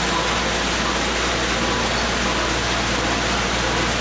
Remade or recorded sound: recorded